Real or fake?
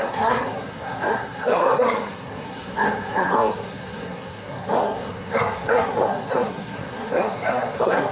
fake